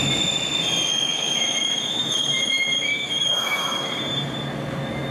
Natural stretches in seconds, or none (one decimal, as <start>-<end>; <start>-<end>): 0.0-0.9; 4.0-5.1